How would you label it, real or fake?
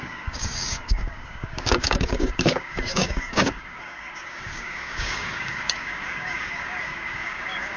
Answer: fake